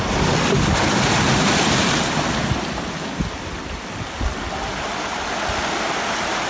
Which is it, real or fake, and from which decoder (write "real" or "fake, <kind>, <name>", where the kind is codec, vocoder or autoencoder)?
real